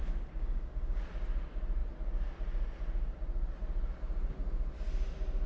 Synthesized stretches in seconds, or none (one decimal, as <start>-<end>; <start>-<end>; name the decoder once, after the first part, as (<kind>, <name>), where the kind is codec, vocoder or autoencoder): 0.0-1.0 (codec, DAC)